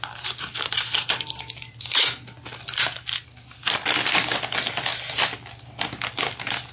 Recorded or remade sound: recorded